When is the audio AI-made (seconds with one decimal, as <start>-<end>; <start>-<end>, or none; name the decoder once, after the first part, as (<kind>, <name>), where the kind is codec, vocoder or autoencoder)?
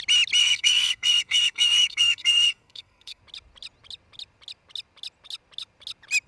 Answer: 0.4-3.2 (codec, SNAC)